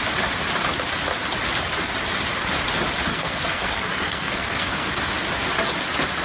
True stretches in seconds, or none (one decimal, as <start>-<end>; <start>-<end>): 0.0-3.1; 5.0-6.2

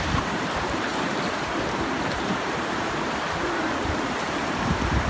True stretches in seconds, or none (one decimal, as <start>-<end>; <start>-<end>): none

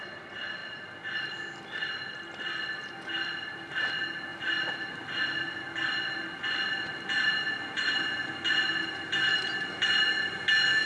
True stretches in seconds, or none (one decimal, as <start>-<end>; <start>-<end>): 0.0-10.9

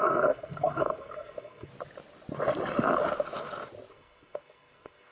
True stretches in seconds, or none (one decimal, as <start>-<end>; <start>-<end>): 1.7-3.9

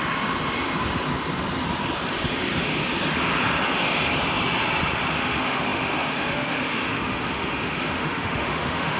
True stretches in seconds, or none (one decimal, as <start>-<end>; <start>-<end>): 0.0-5.1

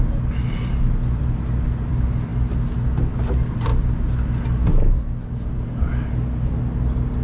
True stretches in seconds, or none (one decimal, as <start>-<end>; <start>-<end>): 0.0-7.2

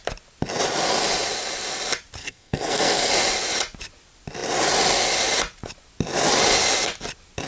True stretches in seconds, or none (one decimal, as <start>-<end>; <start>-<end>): 0.0-2.2; 3.1-7.5